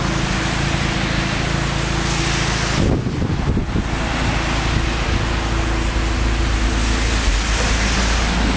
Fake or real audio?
real